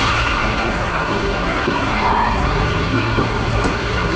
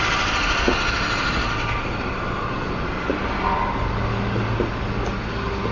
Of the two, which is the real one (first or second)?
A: second